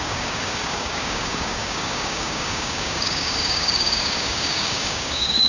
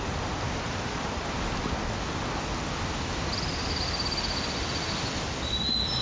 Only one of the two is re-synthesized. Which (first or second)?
first